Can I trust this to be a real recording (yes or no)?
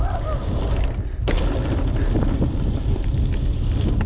yes